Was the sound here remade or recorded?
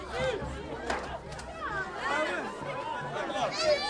recorded